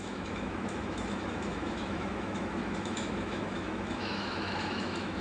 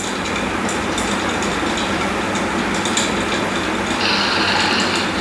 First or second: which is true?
second